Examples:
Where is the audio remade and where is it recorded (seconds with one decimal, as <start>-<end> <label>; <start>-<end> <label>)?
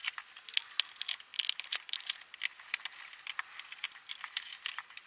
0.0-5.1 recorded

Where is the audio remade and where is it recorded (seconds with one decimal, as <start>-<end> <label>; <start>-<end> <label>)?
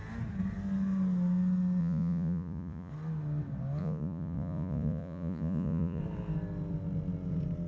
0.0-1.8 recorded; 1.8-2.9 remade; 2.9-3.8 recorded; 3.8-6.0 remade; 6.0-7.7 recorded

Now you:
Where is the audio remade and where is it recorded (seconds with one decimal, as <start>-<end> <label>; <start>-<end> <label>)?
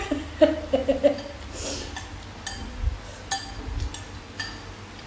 0.0-5.1 recorded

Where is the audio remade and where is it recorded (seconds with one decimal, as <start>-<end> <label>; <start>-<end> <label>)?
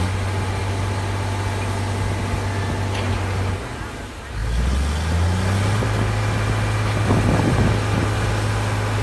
0.0-9.0 recorded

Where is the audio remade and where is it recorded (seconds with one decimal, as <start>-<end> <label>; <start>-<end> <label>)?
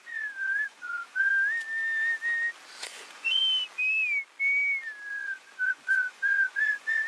0.0-1.3 remade; 1.3-2.8 recorded; 2.8-3.4 remade; 3.4-5.1 recorded; 5.1-7.1 remade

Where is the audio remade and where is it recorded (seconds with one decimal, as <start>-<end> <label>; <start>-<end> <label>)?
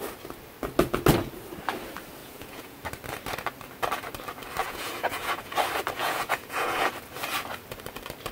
0.0-2.2 recorded; 2.2-2.8 remade; 2.8-4.6 recorded; 4.6-5.5 remade; 5.5-6.0 recorded; 6.0-6.9 remade; 6.9-8.3 recorded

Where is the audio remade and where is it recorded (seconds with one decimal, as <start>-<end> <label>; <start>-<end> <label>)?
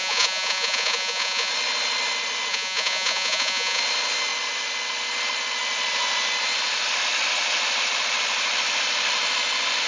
0.0-1.5 remade; 1.5-2.5 recorded; 2.5-3.8 remade; 3.8-9.9 recorded